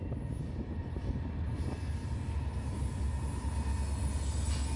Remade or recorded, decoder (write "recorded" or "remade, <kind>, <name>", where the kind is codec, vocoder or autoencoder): recorded